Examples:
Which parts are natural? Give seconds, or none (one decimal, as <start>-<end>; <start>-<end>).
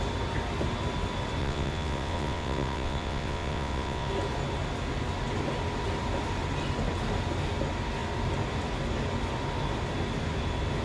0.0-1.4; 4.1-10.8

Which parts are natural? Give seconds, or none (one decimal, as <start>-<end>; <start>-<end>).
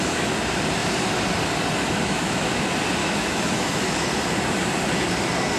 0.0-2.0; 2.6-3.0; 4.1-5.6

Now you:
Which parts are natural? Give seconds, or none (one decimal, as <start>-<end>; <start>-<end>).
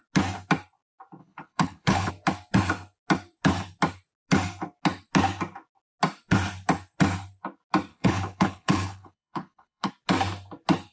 0.0-1.2; 2.1-7.9; 9.9-10.9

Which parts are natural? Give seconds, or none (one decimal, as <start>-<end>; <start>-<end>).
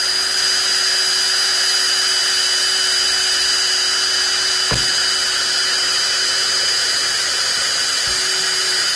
0.0-9.0